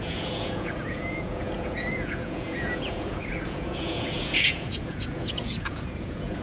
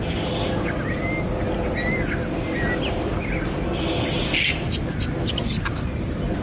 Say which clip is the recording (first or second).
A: second